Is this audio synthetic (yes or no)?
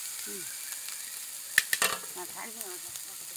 no